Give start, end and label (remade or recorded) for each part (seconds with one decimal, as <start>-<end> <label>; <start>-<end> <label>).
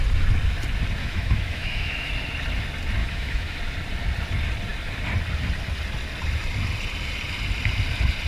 0.0-1.0 recorded; 1.0-2.1 remade; 2.1-3.0 recorded; 3.0-3.6 remade; 3.6-8.3 recorded